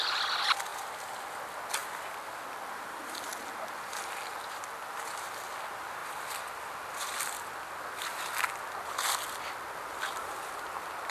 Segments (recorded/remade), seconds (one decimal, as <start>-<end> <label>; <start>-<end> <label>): 0.0-11.1 recorded